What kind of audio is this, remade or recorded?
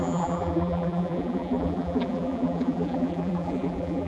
remade